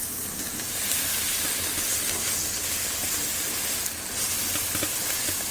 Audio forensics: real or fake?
real